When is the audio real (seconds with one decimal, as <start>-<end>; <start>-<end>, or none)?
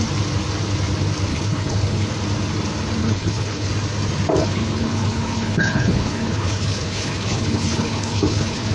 0.0-1.3; 2.1-3.0; 3.7-4.4